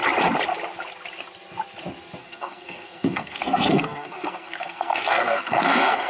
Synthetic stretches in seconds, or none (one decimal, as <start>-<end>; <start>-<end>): 2.2-6.1